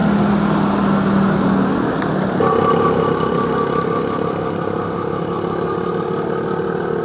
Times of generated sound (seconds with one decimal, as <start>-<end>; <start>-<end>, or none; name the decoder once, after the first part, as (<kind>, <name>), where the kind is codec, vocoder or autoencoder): none